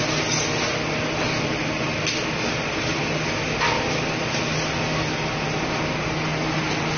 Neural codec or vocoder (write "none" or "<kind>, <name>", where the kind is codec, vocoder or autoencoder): none